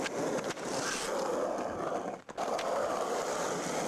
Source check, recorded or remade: recorded